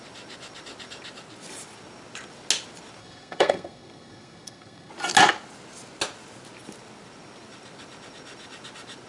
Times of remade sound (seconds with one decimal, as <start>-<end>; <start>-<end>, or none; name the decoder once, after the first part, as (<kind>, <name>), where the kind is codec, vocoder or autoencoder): 3.0-4.9 (codec, SNAC)